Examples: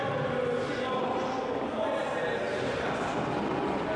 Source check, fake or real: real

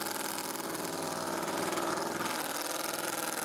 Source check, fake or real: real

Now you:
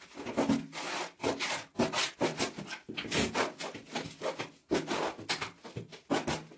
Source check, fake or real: real